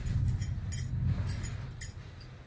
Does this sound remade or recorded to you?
recorded